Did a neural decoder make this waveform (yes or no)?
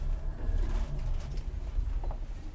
no